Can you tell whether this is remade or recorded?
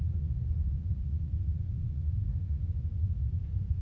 remade